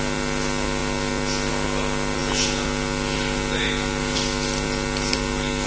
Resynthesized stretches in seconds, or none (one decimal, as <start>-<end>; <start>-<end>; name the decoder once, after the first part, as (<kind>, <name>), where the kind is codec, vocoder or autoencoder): none